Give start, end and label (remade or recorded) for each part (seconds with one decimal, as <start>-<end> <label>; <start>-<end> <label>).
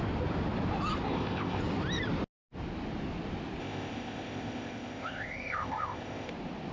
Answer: 0.0-1.1 recorded; 1.1-1.6 remade; 1.6-3.6 recorded; 3.6-6.3 remade; 6.3-6.7 recorded